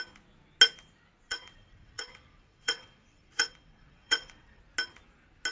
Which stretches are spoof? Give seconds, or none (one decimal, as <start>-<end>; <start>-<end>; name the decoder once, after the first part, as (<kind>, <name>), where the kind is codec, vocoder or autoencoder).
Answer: 1.3-4.6 (vocoder, WaveNeXt)